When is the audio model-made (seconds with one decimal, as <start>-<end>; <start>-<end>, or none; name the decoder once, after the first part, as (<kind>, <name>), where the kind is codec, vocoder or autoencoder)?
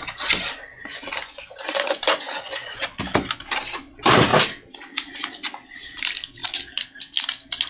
0.7-2.8 (vocoder, Vocos)